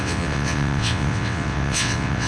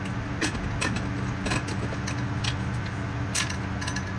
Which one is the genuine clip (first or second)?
second